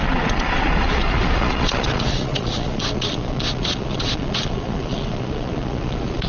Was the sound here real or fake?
fake